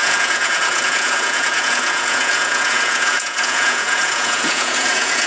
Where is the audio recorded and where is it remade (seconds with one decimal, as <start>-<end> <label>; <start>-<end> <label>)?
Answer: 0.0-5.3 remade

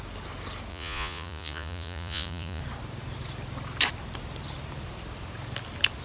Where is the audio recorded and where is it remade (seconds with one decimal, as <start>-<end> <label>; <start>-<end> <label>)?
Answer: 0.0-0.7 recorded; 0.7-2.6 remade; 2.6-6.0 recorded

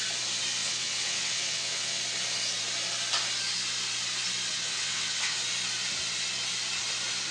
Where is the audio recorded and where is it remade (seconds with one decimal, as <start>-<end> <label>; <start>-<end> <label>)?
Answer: 0.0-0.6 recorded; 0.6-2.0 remade; 2.0-4.5 recorded; 4.5-5.4 remade; 5.4-7.3 recorded